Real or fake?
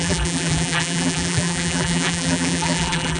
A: fake